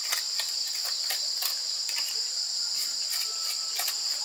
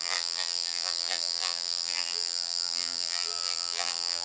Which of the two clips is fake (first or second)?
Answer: second